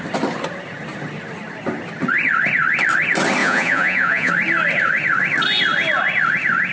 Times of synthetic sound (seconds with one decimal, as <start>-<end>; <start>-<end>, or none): 3.4-4.3

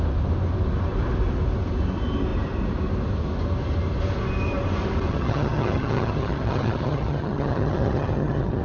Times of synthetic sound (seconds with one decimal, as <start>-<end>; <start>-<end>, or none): 5.1-8.6